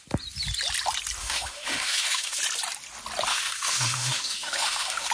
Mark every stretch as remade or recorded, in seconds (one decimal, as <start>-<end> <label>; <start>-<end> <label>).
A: 0.0-1.2 recorded; 1.2-2.4 remade; 2.4-3.3 recorded; 3.3-5.1 remade